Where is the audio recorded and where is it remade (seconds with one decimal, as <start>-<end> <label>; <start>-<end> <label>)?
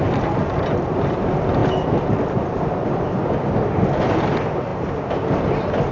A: 0.0-5.9 recorded